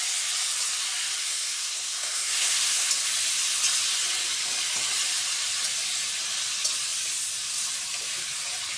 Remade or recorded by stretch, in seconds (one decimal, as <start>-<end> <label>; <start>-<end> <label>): 0.0-1.2 recorded; 1.2-2.9 remade; 2.9-8.8 recorded